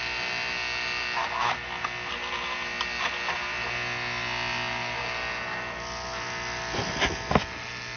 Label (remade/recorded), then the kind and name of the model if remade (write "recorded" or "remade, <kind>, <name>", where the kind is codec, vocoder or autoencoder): recorded